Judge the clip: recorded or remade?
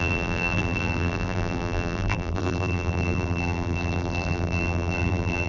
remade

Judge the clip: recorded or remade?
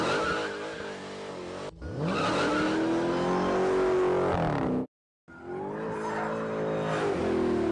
recorded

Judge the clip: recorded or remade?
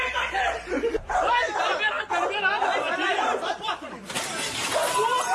remade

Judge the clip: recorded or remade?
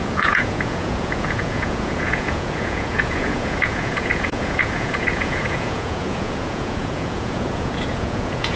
remade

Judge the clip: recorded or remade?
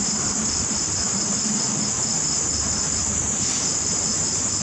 recorded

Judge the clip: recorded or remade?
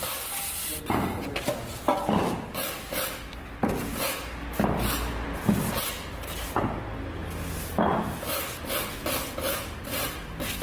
recorded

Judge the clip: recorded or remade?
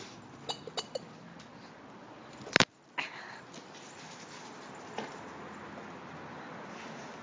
recorded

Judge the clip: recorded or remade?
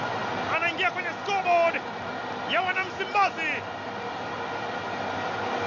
recorded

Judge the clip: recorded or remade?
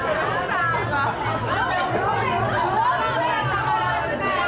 recorded